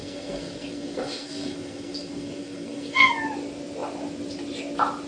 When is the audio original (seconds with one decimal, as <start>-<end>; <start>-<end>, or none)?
3.1-5.1